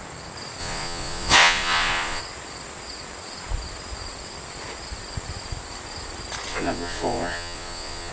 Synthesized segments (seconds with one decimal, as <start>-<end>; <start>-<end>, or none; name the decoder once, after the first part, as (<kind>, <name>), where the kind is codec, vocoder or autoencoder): 0.6-2.2 (vocoder, Vocos); 6.5-8.1